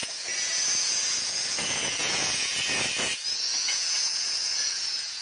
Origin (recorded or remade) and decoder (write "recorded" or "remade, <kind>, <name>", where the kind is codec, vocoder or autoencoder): remade, vocoder, Vocos